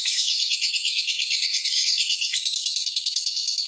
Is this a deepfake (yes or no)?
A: yes